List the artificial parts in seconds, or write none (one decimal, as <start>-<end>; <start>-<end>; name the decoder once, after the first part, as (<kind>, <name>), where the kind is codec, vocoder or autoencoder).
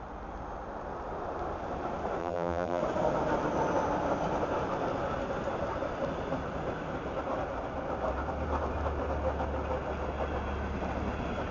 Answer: 2.2-2.8 (vocoder, BigVGAN v2)